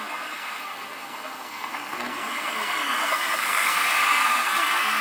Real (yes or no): no